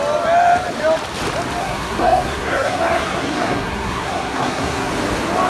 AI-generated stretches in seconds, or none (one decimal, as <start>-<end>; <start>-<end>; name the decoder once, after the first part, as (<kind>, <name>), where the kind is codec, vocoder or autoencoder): 1.6-4.9 (codec, SNAC)